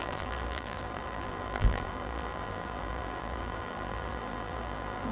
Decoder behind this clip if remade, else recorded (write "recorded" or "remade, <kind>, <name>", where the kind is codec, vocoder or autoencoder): remade, vocoder, BigVGAN v2